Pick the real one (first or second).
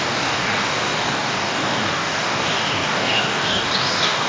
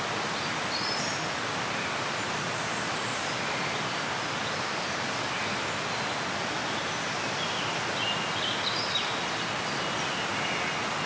second